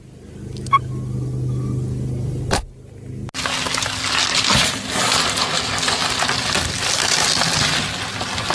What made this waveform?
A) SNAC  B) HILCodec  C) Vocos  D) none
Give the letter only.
D